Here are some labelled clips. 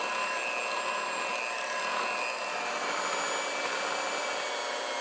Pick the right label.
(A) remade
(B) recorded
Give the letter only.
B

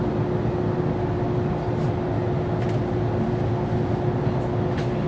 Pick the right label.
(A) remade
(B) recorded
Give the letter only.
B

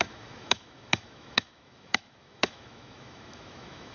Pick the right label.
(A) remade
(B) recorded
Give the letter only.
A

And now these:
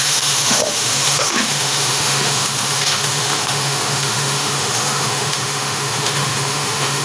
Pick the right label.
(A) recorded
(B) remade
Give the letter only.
B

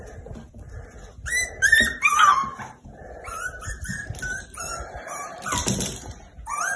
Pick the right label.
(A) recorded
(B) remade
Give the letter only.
A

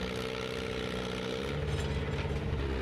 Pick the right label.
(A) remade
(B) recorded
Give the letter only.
B